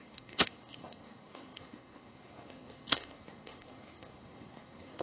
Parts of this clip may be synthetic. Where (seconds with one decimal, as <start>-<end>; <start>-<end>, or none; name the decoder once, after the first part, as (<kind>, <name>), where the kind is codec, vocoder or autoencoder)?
0.0-5.0 (codec, SNAC)